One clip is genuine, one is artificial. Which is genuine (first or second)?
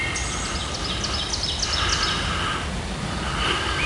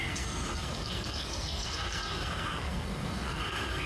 first